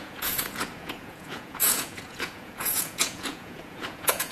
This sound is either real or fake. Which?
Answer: fake